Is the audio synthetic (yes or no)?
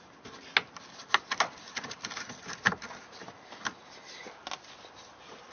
no